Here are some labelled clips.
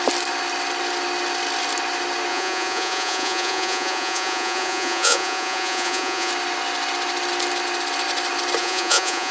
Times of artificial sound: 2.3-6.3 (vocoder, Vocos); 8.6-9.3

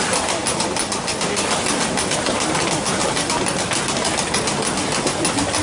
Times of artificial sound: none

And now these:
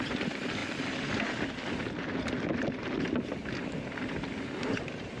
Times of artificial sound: 0.0-0.6 (vocoder, BigVGAN v2); 3.7-5.2

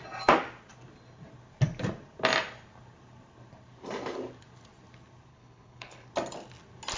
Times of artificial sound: 5.3-6.1 (codec, HILCodec)

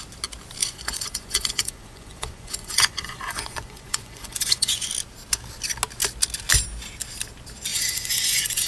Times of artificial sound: 0.6-4.9 (vocoder, Vocos); 7.7-8.7